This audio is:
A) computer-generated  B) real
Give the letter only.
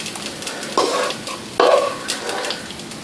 B